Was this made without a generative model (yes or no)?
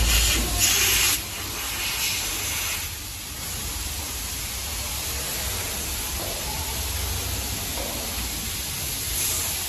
yes